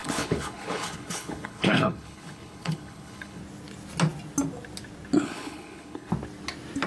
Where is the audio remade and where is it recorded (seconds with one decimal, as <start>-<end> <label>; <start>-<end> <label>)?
0.0-3.4 remade; 3.4-5.2 recorded; 5.2-6.1 remade; 6.1-6.9 recorded